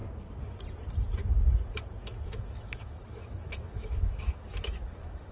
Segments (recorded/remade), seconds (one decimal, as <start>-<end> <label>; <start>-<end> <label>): 0.0-2.0 recorded; 2.0-5.3 remade